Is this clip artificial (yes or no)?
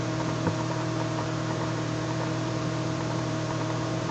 yes